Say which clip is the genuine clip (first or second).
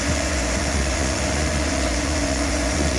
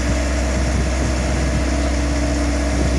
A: second